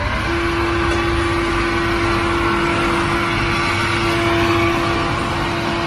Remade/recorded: recorded